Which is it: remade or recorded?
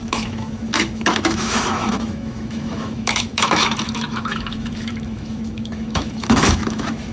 remade